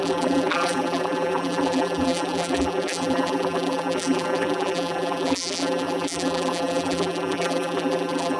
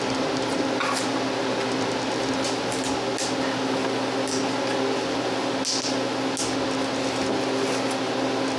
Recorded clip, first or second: second